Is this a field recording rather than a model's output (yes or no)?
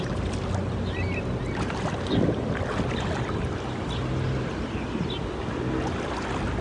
yes